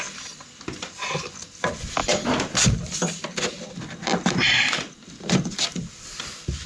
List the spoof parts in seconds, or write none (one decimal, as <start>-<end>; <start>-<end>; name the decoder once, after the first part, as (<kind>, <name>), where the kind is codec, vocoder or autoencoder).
0.0-2.0 (vocoder, BigVGAN v2); 4.2-6.7